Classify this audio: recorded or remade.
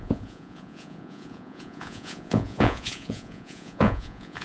remade